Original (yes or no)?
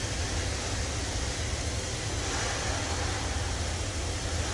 yes